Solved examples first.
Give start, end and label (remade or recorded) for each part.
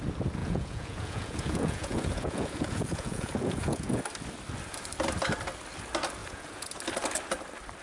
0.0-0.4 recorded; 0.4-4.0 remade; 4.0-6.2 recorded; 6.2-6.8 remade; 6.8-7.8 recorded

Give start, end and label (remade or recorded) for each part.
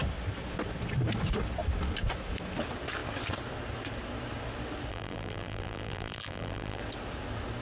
0.0-4.9 recorded; 4.9-6.8 remade; 6.8-7.6 recorded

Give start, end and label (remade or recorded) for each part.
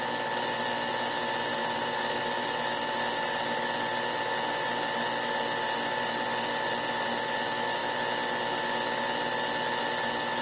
0.0-1.5 recorded; 1.5-2.2 remade; 2.2-10.4 recorded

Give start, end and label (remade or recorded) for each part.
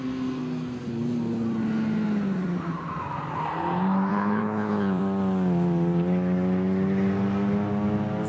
0.0-4.1 recorded; 4.1-5.0 remade; 5.0-8.3 recorded